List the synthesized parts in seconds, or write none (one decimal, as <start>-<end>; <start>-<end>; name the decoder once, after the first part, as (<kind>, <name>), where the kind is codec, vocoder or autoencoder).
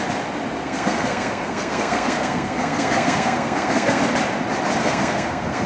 0.6-4.0 (codec, SNAC); 4.8-5.7